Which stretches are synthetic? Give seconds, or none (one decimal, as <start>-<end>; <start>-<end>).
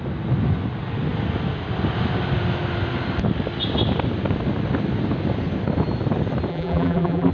6.5-7.3